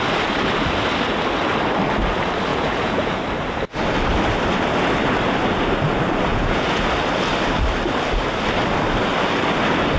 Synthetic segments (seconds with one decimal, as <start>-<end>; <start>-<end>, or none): 2.5-3.2; 6.3-6.9